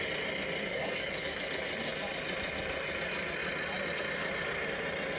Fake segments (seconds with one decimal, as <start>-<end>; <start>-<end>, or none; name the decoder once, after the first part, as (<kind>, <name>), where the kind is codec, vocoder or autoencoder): 0.7-1.4 (codec, DAC)